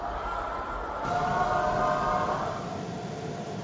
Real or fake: real